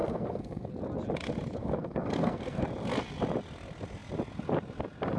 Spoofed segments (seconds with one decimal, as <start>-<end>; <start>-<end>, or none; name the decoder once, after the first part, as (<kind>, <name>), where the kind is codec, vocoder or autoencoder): 0.0-0.7 (codec, SNAC); 1.6-2.6